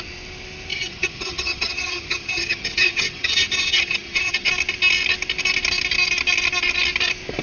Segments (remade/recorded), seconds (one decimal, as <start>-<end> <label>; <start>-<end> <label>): 0.0-0.7 recorded; 0.7-4.5 remade; 4.5-7.4 recorded